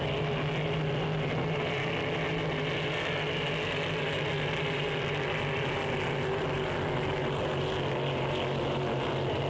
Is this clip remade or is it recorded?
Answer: recorded